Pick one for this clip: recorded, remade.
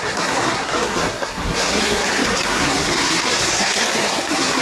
remade